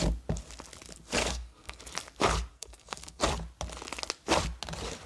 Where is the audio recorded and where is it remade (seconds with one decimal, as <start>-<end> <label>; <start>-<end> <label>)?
0.0-1.2 recorded; 1.2-1.8 remade; 1.8-2.5 recorded; 2.5-3.2 remade; 3.2-5.1 recorded

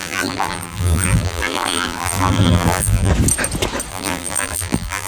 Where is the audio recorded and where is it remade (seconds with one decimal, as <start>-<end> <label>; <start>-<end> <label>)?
0.0-3.1 remade; 3.1-3.9 recorded; 3.9-5.1 remade

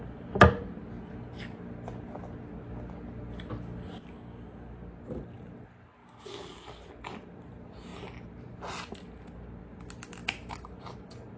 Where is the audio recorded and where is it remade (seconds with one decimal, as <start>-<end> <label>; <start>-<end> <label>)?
0.0-10.2 recorded; 10.2-11.4 remade

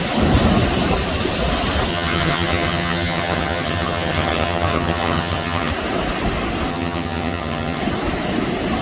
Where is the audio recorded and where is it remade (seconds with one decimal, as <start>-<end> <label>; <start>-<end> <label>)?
0.0-1.9 recorded; 1.9-5.7 remade; 5.7-6.7 recorded; 6.7-7.8 remade; 7.8-8.8 recorded

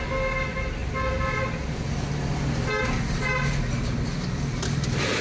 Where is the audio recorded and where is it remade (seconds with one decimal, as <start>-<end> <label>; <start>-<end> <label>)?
0.0-5.2 recorded

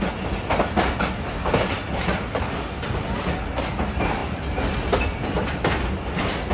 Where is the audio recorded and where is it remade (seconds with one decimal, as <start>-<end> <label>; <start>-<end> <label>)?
0.0-4.2 recorded; 4.2-5.8 remade; 5.8-6.5 recorded

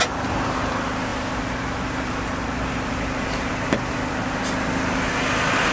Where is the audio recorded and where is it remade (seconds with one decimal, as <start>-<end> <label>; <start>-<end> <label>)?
0.0-1.1 recorded; 1.1-3.5 remade; 3.5-5.7 recorded

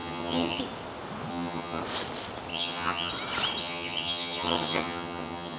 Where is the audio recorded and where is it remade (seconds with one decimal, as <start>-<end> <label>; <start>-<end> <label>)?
0.0-0.6 remade; 0.6-1.3 recorded; 1.3-1.8 remade; 1.8-2.5 recorded; 2.5-3.1 remade; 3.1-3.6 recorded; 3.6-5.6 remade